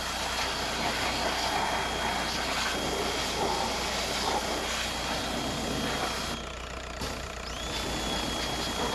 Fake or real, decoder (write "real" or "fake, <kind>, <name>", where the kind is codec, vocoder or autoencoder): real